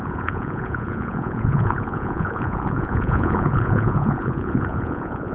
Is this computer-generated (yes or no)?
yes